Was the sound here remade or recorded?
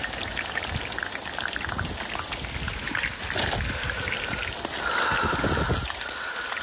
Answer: recorded